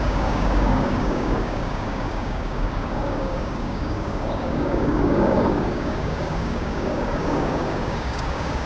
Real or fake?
fake